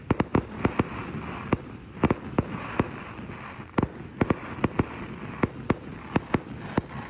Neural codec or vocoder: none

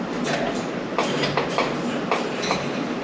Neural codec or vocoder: none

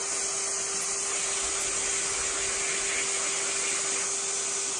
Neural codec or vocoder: none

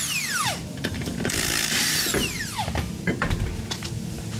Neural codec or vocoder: vocoder, BigVGAN v2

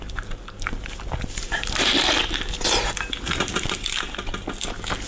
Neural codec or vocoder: none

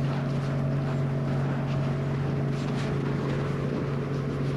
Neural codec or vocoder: none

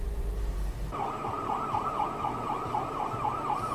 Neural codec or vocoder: vocoder, BigVGAN v2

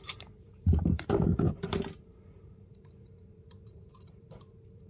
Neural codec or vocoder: vocoder, BigVGAN v2